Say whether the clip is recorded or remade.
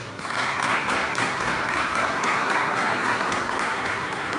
remade